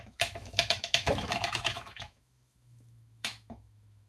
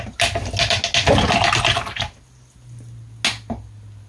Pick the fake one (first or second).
first